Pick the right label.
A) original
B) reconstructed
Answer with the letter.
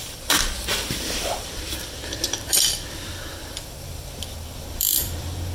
B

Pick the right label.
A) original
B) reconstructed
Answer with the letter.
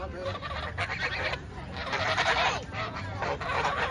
B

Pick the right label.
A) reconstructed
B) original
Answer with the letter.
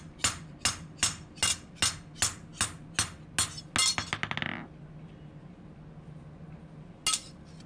B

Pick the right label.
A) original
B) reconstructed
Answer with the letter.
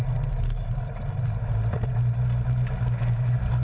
A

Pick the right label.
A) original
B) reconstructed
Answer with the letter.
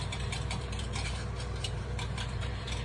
B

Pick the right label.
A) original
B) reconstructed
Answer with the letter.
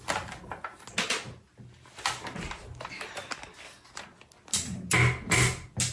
A